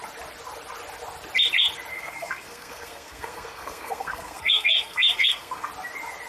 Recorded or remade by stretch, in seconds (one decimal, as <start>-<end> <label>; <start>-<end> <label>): 0.0-1.9 recorded; 1.9-5.7 remade; 5.7-6.3 recorded